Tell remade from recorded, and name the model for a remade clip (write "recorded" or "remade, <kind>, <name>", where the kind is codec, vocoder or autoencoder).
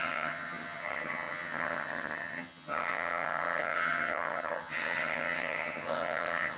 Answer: remade, vocoder, HiFi-GAN